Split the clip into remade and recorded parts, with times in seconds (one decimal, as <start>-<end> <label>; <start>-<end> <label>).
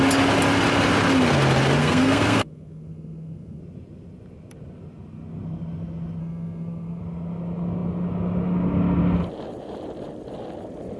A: 0.0-1.8 recorded; 1.8-3.6 remade; 3.6-6.2 recorded; 6.2-7.0 remade; 7.0-11.0 recorded